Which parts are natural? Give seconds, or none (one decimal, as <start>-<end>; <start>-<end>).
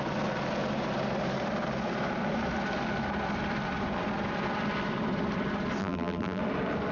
0.0-5.8; 6.4-6.9